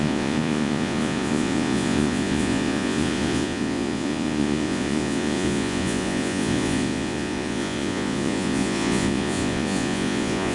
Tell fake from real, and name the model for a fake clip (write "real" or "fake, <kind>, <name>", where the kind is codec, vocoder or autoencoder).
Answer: fake, vocoder, Vocos